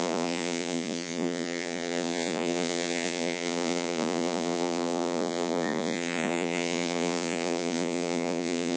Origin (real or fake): fake